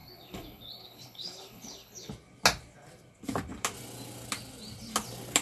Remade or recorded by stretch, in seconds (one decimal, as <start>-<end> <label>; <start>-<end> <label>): 0.0-2.1 remade; 2.1-5.4 recorded